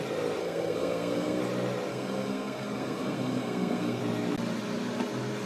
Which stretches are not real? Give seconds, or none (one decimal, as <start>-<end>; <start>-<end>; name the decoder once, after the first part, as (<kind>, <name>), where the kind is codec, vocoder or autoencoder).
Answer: 0.4-1.4 (codec, SNAC); 1.9-4.0